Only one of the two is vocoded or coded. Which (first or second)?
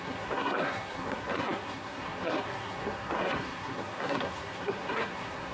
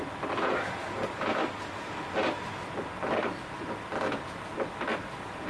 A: first